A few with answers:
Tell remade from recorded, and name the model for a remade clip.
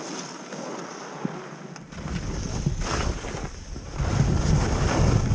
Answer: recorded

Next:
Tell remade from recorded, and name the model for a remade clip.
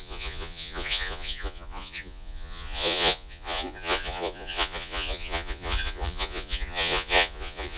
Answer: remade, vocoder, Vocos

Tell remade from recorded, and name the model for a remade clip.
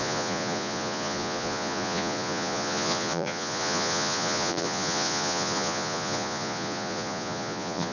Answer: remade, vocoder, Vocos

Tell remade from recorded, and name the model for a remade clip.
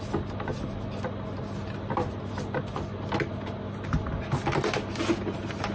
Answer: recorded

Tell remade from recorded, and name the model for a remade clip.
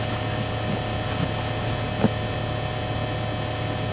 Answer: recorded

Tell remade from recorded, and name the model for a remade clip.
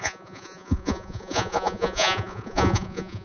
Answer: remade, vocoder, Vocos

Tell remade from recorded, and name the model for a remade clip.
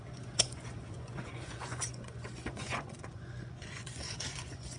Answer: remade, vocoder, Vocos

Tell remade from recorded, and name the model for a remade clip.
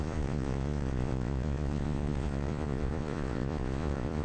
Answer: remade, vocoder, Vocos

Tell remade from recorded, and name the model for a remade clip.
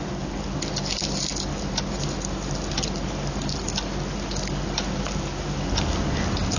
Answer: recorded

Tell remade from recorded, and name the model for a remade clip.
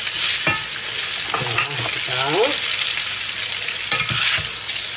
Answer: recorded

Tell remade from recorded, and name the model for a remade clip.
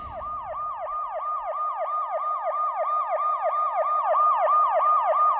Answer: recorded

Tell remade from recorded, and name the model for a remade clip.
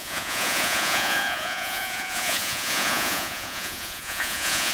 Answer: remade, vocoder, Vocos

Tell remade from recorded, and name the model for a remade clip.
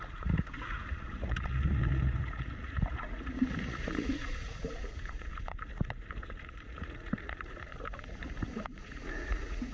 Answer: remade, vocoder, Vocos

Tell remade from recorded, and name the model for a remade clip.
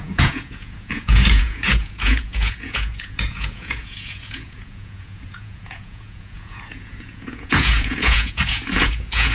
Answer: remade, vocoder, Vocos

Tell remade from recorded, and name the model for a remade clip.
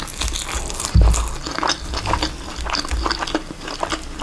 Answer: recorded